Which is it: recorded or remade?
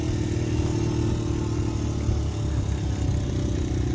recorded